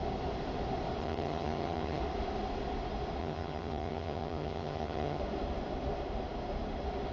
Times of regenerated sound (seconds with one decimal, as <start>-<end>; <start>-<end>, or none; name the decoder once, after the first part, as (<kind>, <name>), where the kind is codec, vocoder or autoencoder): 1.0-2.0 (vocoder, HiFi-GAN); 3.2-5.2